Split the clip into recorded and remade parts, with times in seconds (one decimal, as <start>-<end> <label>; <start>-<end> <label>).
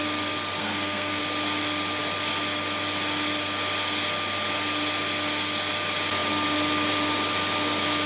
0.0-0.6 recorded; 0.6-1.2 remade; 1.2-8.1 recorded